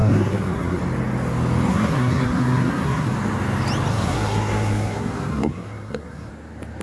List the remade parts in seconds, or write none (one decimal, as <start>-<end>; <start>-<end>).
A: 0.0-0.8; 1.7-3.1; 3.9-6.3

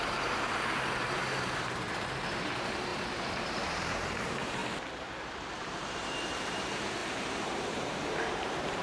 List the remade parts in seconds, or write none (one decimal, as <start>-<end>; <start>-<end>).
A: 0.0-4.6; 5.5-8.8